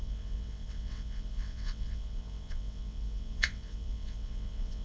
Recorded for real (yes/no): no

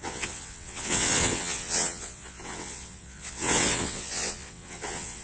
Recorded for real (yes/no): no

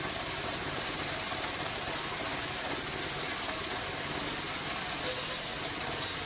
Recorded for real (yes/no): yes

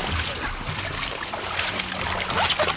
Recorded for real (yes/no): yes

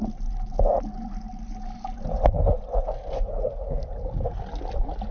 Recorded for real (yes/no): yes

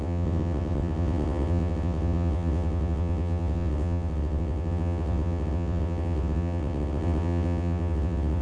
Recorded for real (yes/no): no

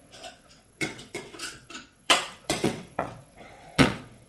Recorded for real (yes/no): no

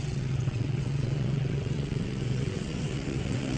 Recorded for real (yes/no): no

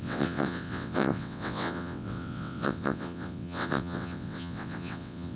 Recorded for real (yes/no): no